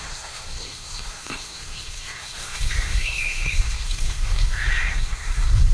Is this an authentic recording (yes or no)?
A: no